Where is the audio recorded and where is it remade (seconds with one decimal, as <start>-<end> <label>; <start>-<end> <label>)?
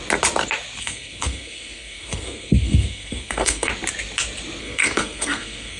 0.0-0.8 recorded; 0.8-3.7 remade; 3.7-4.6 recorded; 4.6-5.8 remade